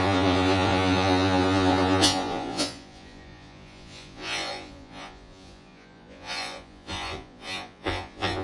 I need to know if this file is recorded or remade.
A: remade